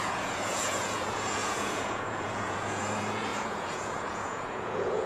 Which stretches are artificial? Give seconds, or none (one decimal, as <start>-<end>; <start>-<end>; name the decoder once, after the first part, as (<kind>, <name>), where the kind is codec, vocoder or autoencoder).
0.0-5.1 (vocoder, Vocos)